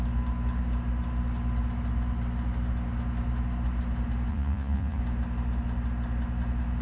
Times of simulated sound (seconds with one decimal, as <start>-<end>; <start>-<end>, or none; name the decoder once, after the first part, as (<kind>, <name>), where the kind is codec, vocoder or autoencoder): 4.3-5.0 (vocoder, Vocos)